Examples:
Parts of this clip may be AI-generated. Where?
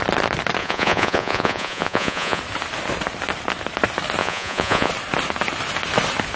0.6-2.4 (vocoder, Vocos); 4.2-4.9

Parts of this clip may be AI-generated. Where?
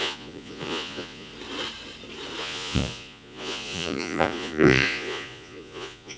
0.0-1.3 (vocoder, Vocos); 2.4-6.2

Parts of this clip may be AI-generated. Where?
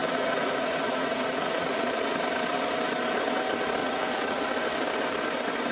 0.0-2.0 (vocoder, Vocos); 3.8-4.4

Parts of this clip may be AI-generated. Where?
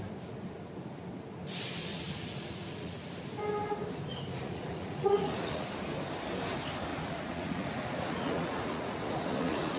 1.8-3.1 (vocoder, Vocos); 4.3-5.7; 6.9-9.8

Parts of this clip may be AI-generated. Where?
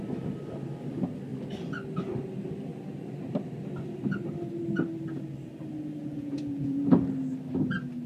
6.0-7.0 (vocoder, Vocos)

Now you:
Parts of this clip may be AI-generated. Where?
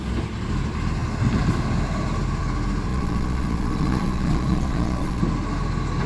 2.9-5.2 (vocoder, Vocos)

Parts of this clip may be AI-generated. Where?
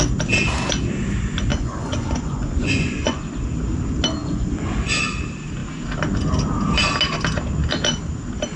1.5-3.2 (vocoder, Vocos); 4.2-4.8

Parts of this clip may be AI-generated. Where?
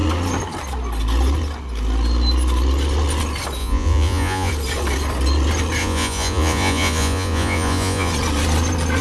3.6-4.5 (vocoder, Vocos); 5.8-8.1